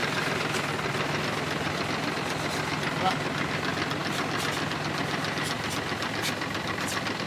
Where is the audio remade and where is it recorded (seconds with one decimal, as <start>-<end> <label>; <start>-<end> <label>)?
0.0-7.3 recorded